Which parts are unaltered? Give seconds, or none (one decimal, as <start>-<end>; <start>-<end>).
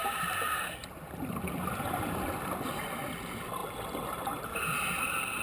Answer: 1.7-5.4